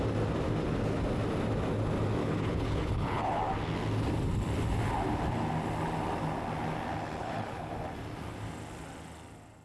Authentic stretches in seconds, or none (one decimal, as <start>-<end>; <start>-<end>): 0.0-2.2; 3.4-7.2; 7.7-9.6